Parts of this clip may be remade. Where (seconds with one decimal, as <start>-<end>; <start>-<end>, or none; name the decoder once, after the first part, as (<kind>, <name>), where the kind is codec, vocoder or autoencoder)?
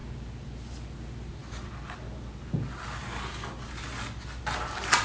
none